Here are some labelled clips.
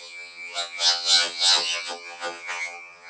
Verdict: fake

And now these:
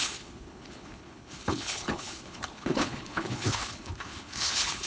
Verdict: fake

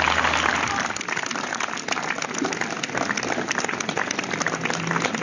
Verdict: real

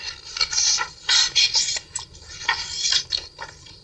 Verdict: real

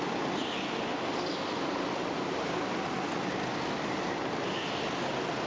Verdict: real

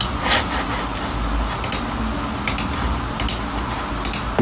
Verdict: real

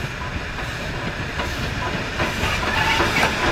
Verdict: real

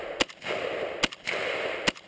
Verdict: real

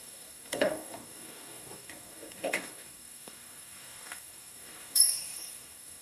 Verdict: fake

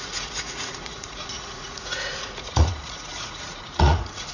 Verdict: fake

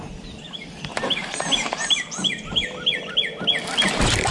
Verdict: fake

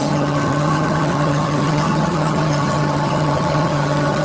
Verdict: fake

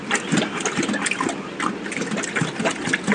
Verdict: real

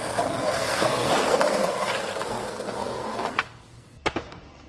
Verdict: fake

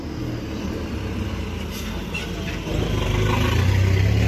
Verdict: real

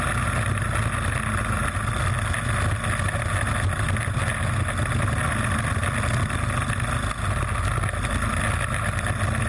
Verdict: real